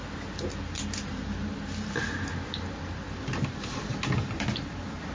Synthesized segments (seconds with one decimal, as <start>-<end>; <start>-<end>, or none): none